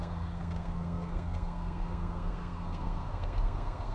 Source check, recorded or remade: remade